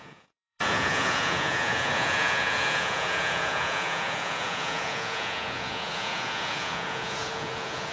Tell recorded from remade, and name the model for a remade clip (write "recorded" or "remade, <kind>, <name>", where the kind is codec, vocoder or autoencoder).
remade, vocoder, Vocos